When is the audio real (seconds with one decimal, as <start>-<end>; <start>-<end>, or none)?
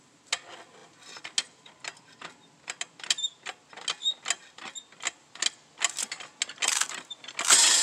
0.0-7.8